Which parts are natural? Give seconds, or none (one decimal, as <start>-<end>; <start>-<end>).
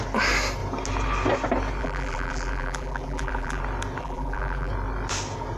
0.0-1.8; 3.6-4.0; 4.7-5.6